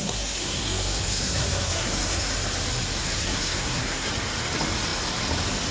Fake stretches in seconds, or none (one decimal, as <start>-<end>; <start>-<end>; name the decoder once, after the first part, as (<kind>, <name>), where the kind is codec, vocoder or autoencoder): 0.0-2.3 (codec, SNAC); 3.0-4.1